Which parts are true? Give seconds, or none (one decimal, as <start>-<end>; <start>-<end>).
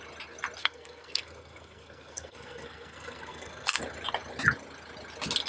0.0-0.6; 3.8-5.5